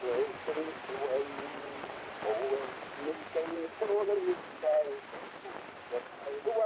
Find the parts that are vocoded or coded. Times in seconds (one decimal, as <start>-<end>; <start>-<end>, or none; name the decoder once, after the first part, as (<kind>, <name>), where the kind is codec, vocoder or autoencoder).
1.5-2.1 (vocoder, WaveNeXt)